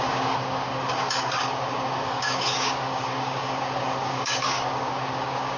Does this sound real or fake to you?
fake